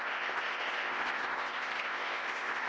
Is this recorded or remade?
remade